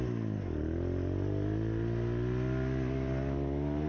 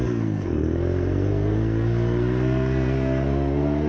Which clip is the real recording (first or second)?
first